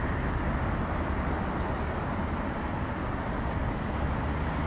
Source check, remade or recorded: remade